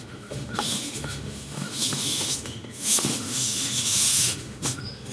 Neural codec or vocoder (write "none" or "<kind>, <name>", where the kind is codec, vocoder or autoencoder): autoencoder, DAC-VAE